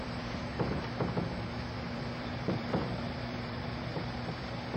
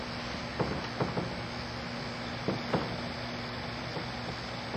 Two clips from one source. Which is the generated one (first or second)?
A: first